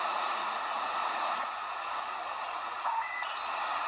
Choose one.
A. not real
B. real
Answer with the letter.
A